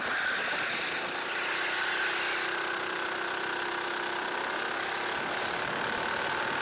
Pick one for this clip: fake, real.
real